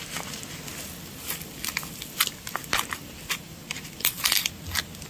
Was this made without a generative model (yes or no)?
yes